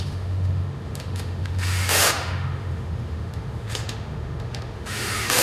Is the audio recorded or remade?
remade